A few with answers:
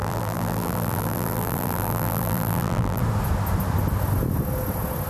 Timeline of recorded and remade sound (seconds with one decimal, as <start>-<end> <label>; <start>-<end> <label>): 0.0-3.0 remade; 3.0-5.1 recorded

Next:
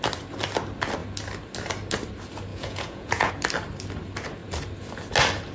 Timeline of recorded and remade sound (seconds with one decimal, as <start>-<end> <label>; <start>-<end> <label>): 0.0-2.5 recorded; 2.5-3.3 remade; 3.3-5.5 recorded

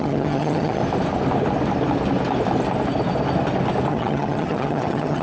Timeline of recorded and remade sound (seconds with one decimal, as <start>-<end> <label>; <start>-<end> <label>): 0.0-0.8 remade; 0.8-3.9 recorded; 3.9-5.2 remade